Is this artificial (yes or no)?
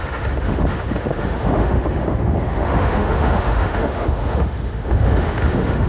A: yes